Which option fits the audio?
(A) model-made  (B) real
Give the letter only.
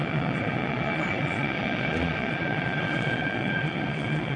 A